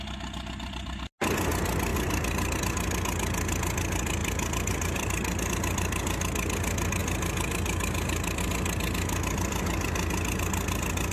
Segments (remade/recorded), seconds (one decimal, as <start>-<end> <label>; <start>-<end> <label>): 0.0-1.9 recorded; 1.9-2.6 remade; 2.6-4.2 recorded; 4.2-5.5 remade; 5.5-11.1 recorded